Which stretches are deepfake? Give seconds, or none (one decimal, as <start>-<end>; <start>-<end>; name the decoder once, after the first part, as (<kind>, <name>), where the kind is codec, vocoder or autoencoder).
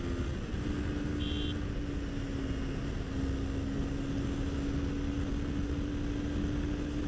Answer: none